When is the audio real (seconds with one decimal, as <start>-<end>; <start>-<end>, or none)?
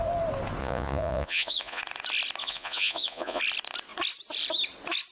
0.0-0.6; 1.8-2.4; 3.4-5.1